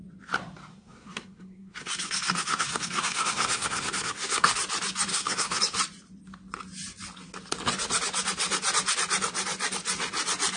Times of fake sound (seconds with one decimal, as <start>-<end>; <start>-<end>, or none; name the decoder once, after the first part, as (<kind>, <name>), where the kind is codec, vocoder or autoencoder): 0.7-4.5 (codec, SNAC); 5.1-5.6